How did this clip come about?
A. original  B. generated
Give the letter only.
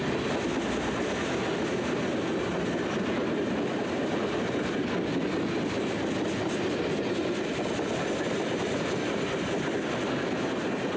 A